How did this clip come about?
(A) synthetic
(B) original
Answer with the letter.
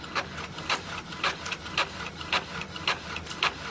B